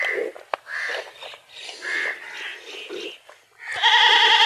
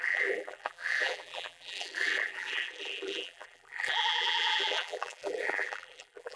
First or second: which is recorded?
first